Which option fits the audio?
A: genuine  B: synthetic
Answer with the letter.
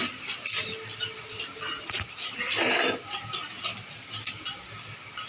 A